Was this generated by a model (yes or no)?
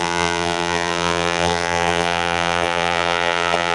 yes